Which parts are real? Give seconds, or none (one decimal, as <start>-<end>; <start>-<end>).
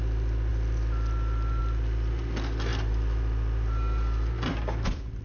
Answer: 0.0-0.5; 1.6-5.2